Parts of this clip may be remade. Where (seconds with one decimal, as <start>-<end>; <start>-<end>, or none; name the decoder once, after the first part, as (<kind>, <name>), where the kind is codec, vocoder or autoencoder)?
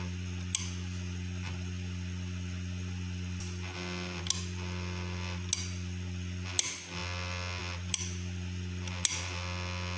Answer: none